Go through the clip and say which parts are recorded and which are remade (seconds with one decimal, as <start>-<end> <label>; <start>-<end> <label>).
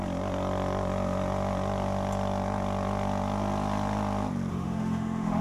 0.0-4.5 recorded; 4.5-5.4 remade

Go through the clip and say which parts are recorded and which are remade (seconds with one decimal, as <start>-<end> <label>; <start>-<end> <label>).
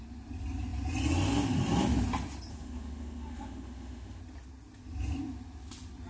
0.0-2.5 recorded; 2.5-4.2 remade; 4.2-6.1 recorded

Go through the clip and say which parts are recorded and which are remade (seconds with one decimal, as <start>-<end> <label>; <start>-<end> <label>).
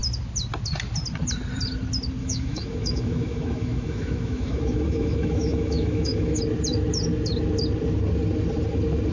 0.0-2.2 recorded; 2.2-6.4 remade; 6.4-9.1 recorded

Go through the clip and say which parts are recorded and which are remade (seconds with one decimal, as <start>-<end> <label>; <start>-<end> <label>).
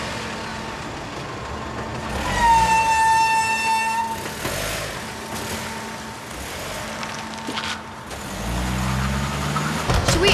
0.0-10.3 recorded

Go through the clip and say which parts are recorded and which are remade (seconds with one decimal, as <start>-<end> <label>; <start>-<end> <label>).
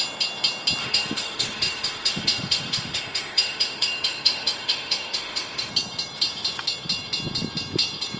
0.0-0.8 recorded; 0.8-5.7 remade; 5.7-8.2 recorded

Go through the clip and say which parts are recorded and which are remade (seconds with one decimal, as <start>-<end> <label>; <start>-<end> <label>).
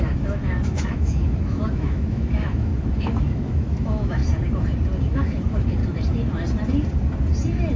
0.0-4.2 remade; 4.2-5.0 recorded; 5.0-5.8 remade; 5.8-7.8 recorded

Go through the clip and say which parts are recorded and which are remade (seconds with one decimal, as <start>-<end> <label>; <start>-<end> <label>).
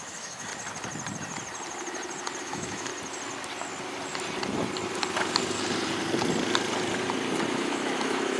0.0-0.5 remade; 0.5-2.4 recorded; 2.4-2.9 remade; 2.9-7.5 recorded; 7.5-8.4 remade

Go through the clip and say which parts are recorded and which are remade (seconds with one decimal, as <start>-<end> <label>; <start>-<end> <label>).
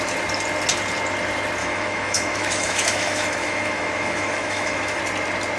0.0-1.6 recorded; 1.6-5.0 remade; 5.0-5.6 recorded